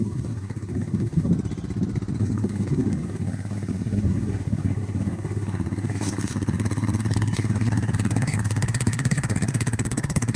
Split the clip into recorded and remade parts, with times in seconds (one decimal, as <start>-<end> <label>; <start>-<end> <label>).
0.0-1.3 remade; 1.3-2.2 recorded; 2.2-10.4 remade